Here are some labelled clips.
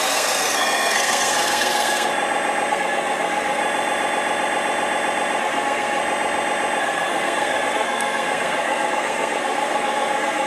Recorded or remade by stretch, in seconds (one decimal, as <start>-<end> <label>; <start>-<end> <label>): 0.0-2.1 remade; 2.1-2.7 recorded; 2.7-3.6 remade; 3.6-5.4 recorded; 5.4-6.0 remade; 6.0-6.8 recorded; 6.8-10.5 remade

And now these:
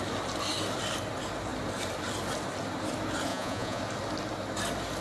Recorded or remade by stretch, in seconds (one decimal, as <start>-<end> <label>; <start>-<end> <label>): 0.0-3.3 recorded; 3.3-3.8 remade; 3.8-5.0 recorded

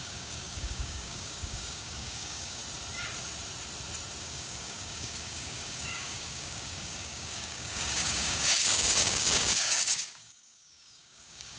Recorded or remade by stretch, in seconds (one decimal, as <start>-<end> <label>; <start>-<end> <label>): 0.0-2.6 remade; 2.6-4.2 recorded; 4.2-11.6 remade